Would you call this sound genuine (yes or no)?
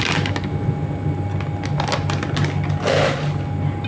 yes